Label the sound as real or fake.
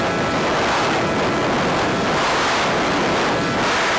real